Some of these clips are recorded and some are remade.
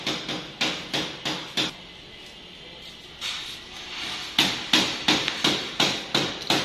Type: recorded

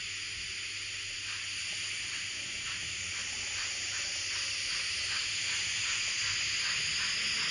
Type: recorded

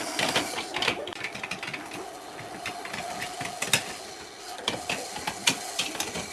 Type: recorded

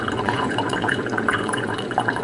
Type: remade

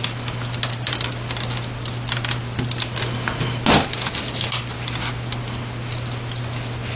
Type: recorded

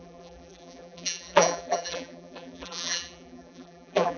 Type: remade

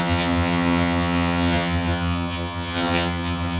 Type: remade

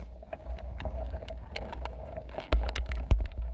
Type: remade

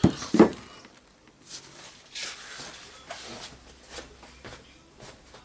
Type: recorded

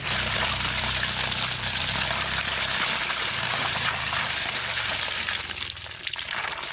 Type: remade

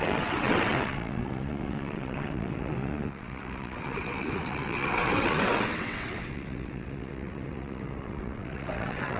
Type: remade